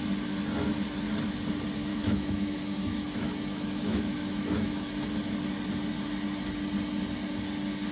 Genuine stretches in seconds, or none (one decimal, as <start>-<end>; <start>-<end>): 0.0-1.9; 4.9-7.9

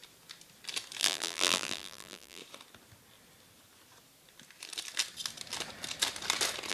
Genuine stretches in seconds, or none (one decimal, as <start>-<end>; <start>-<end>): 0.0-1.0; 2.4-6.7

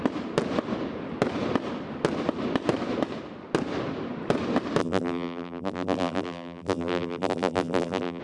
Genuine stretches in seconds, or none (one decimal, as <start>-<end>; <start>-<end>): 0.0-4.8

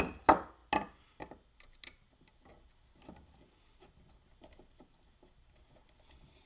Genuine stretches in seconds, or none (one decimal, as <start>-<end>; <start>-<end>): 0.0-6.5

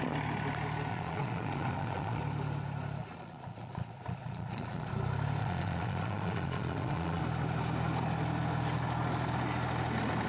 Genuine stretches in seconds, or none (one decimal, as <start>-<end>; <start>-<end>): 0.0-0.9; 2.2-3.0; 4.9-5.4; 7.2-10.3

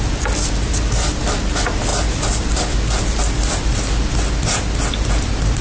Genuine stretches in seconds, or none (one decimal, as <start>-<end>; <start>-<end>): 0.0-5.6